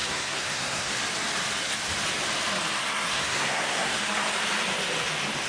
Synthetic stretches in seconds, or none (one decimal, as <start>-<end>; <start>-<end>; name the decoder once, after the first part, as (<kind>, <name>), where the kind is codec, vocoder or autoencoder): 0.0-0.9 (codec, SNAC); 2.8-4.0